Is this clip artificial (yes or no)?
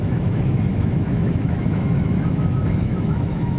yes